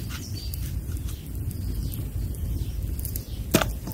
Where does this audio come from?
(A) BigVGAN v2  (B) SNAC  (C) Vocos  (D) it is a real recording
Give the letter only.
A